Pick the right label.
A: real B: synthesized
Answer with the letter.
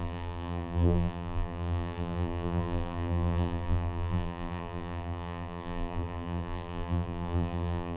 B